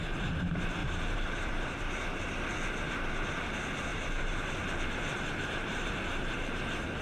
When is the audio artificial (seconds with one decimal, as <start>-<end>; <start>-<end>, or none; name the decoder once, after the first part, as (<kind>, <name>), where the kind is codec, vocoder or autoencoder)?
0.8-1.9 (vocoder, BigVGAN v2); 3.9-4.5; 5.4-6.6